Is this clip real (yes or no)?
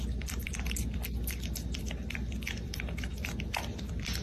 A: no